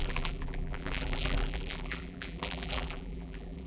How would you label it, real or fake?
fake